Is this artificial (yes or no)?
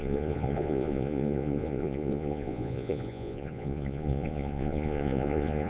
yes